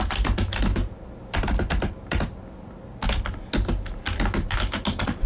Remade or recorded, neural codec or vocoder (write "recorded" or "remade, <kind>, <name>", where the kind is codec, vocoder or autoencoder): recorded